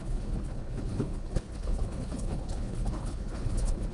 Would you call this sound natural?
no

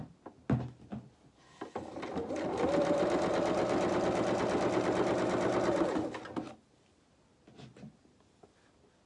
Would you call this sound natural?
yes